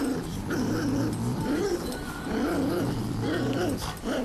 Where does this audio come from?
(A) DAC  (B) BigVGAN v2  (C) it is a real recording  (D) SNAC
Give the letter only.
B